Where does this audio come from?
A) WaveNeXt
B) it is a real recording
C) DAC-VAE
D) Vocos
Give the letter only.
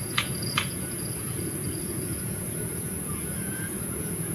D